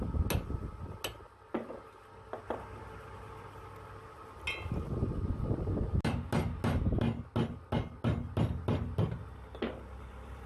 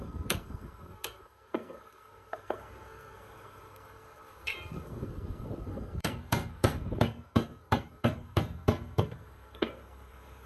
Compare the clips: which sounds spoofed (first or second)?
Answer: second